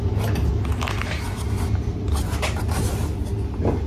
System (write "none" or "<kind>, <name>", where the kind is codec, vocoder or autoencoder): none